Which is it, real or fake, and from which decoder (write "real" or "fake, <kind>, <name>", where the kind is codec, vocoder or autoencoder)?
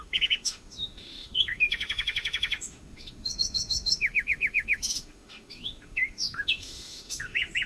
fake, autoencoder, DAC-VAE